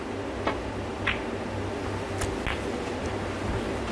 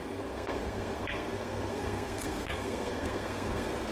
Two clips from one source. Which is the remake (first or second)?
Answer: second